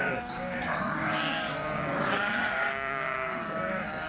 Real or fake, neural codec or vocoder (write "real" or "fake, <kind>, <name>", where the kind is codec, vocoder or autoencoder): fake, codec, DAC